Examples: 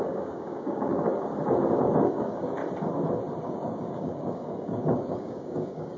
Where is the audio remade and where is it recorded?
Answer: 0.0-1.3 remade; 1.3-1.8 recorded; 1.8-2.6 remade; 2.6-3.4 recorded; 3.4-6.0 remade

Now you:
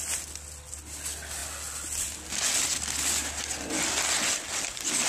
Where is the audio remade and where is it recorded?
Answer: 0.0-5.1 recorded

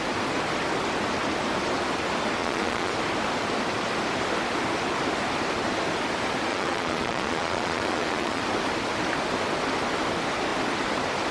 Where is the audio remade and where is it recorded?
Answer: 0.0-2.4 recorded; 2.4-2.9 remade; 2.9-6.5 recorded; 6.5-8.4 remade; 8.4-11.3 recorded

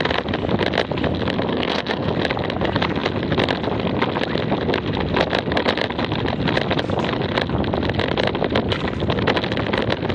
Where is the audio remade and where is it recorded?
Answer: 0.0-1.5 recorded; 1.5-2.1 remade; 2.1-10.1 recorded